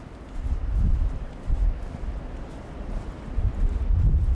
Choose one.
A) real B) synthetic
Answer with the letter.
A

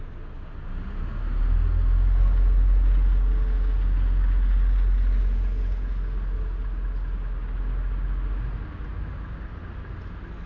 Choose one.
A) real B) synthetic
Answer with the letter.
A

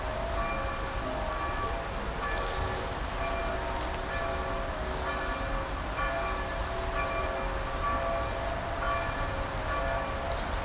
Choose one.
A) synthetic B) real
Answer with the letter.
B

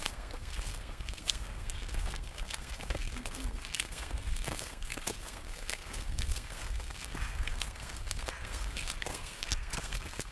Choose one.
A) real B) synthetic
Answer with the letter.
B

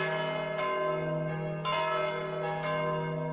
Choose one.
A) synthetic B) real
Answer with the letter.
B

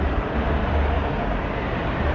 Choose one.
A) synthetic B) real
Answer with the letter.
A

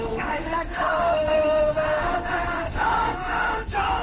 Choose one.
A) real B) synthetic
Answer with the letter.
B